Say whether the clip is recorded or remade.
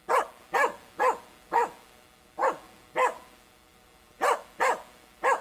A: recorded